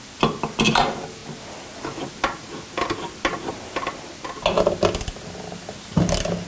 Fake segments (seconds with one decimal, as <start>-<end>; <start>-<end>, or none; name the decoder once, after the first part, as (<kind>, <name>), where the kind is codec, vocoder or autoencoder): none